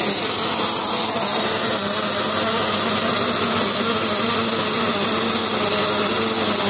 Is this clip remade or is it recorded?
recorded